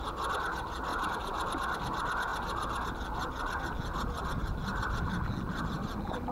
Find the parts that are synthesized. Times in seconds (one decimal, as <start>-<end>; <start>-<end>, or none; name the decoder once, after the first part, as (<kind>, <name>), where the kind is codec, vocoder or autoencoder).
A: 0.9-1.8 (vocoder, BigVGAN v2)